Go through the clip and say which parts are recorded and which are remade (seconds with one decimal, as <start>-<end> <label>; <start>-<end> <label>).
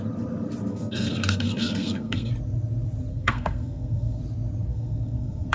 0.0-0.7 recorded; 0.7-2.3 remade; 2.3-3.1 recorded; 3.1-4.2 remade; 4.2-4.7 recorded; 4.7-5.5 remade